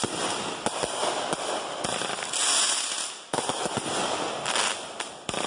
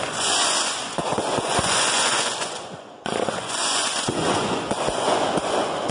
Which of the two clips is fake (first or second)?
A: second